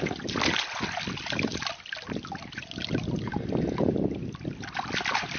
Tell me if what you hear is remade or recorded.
recorded